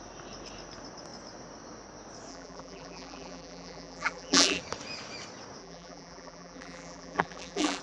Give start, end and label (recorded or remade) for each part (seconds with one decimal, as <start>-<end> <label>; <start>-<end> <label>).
0.0-2.3 recorded; 2.3-4.6 remade; 4.6-5.6 recorded; 5.6-7.8 remade

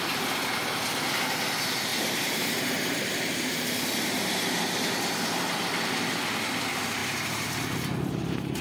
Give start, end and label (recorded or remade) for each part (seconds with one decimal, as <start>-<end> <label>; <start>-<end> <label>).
0.0-1.9 recorded; 1.9-4.6 remade; 4.6-7.0 recorded; 7.0-8.6 remade

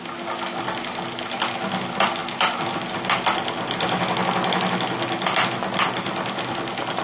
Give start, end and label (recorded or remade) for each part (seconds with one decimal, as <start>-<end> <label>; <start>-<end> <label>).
0.0-7.0 recorded

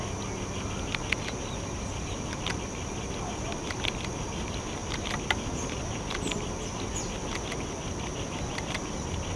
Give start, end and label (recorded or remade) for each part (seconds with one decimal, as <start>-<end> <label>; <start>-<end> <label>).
0.0-9.4 recorded

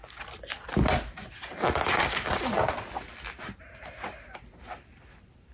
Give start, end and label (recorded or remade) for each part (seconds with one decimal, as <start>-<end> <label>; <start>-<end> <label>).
0.0-2.7 remade; 2.7-5.5 recorded